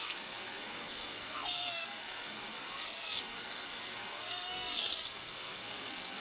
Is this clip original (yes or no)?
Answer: no